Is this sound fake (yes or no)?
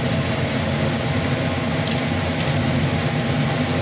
no